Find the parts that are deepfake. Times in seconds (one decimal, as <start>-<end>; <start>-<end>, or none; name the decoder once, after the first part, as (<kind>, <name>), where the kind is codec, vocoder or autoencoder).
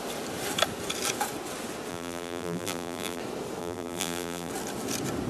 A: 1.9-3.2 (vocoder, BigVGAN v2); 3.6-4.5